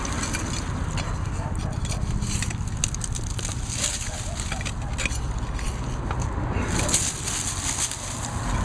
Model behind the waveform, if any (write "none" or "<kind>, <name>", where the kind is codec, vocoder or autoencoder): none